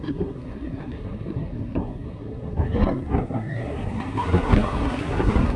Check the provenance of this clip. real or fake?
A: fake